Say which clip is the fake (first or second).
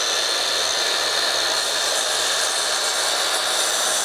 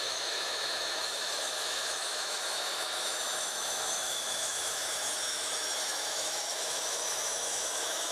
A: second